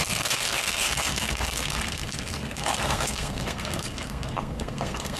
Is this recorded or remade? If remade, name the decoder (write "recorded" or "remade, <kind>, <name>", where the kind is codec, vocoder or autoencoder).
remade, codec, SNAC